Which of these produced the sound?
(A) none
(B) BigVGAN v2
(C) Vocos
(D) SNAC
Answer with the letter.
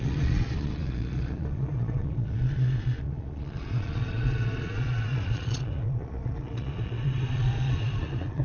C